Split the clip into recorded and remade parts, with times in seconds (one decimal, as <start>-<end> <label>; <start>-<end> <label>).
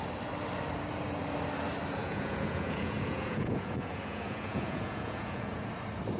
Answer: 0.0-2.0 recorded; 2.0-5.7 remade; 5.7-6.2 recorded